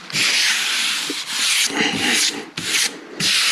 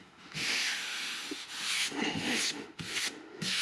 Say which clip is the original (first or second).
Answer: first